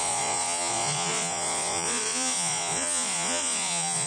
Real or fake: fake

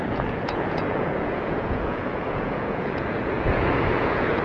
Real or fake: fake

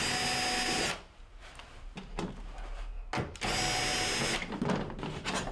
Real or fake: real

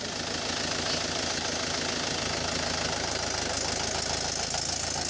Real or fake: real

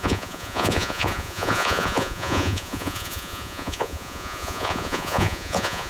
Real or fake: fake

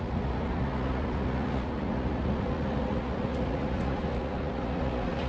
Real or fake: fake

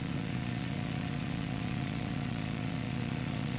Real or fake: fake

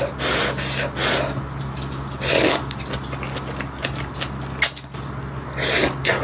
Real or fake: real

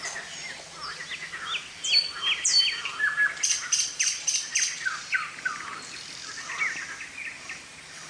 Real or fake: real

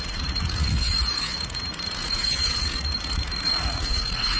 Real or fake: fake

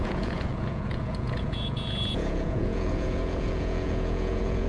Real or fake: fake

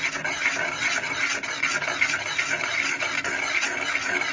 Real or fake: real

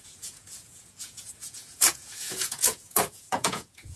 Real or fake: fake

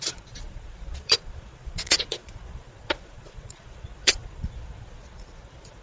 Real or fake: fake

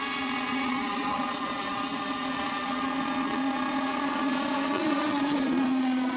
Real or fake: fake